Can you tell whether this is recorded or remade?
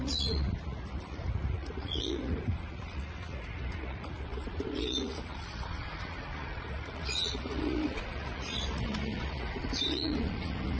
remade